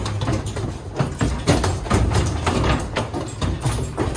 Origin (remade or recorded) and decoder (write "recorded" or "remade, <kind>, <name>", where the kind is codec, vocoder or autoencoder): recorded